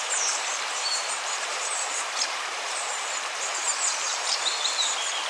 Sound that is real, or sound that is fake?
fake